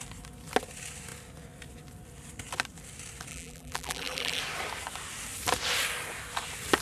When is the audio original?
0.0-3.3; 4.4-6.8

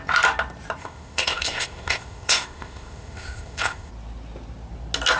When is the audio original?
0.0-0.8; 3.9-5.2

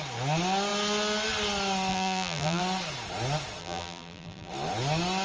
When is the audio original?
0.0-1.9; 2.6-3.6; 4.5-5.2

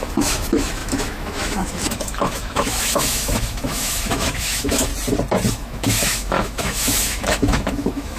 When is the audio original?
4.9-5.5

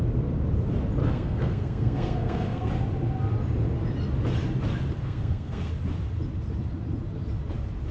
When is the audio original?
0.0-1.0; 2.7-5.0; 5.7-7.9

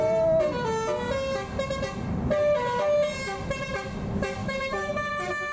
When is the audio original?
0.0-4.4; 5.1-5.5